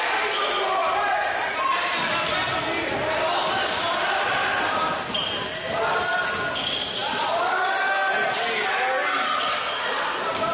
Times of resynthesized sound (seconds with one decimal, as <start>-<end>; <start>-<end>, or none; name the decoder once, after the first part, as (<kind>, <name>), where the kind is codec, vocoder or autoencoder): none